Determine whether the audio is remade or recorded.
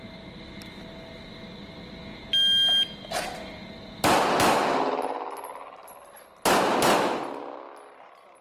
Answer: recorded